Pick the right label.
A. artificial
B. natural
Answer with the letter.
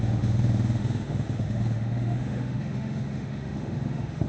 A